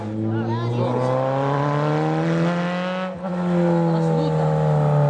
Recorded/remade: recorded